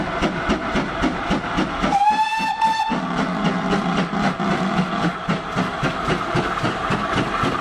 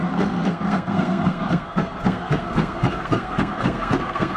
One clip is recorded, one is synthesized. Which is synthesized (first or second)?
second